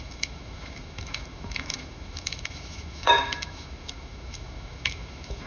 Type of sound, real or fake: fake